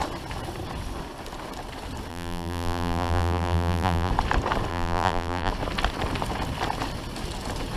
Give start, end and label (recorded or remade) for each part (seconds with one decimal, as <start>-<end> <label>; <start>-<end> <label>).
0.0-2.1 recorded; 2.1-4.1 remade; 4.1-4.7 recorded; 4.7-5.5 remade; 5.5-7.8 recorded